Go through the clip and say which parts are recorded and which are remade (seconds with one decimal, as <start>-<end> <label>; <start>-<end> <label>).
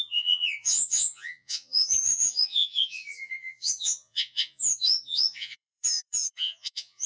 0.0-7.1 remade